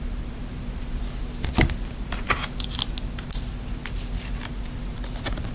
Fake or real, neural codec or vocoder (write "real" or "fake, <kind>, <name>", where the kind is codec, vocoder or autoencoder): real